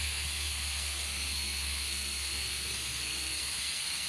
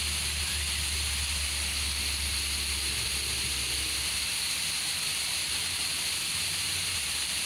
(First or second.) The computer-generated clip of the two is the first